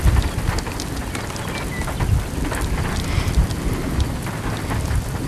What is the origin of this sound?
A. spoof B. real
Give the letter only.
B